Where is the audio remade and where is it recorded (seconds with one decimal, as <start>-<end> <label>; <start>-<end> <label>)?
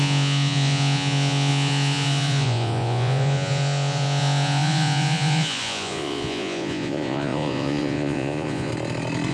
0.0-8.7 remade; 8.7-9.3 recorded